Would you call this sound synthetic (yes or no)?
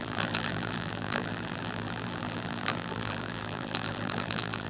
yes